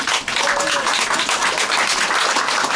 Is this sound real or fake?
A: real